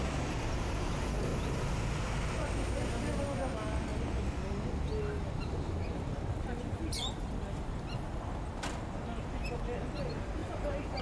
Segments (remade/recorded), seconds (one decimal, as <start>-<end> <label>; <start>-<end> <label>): 0.0-11.0 recorded